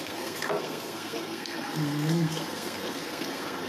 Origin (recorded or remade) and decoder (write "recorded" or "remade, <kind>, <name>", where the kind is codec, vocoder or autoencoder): remade, codec, SNAC